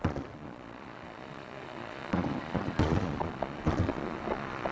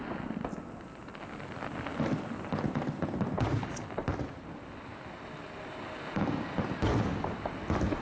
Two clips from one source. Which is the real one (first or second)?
second